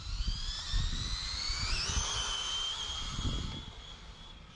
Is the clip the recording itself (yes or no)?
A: yes